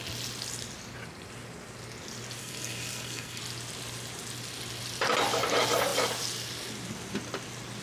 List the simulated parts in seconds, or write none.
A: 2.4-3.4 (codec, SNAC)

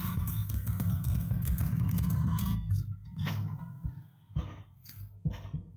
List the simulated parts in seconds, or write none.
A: 0.0-5.8 (codec, SNAC)

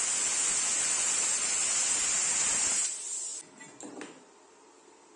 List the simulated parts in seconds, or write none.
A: none

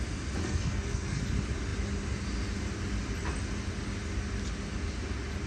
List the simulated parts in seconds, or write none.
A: 0.4-1.2 (codec, SNAC)

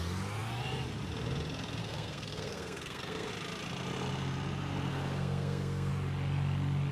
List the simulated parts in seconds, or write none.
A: 1.8-3.3 (codec, SNAC); 4.9-5.9

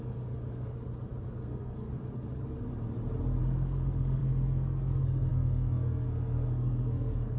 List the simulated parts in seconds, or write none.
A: 0.0-0.7 (codec, SNAC); 1.3-1.9; 3.4-7.4

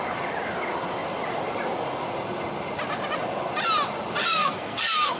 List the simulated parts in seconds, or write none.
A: 4.2-5.2 (codec, SNAC)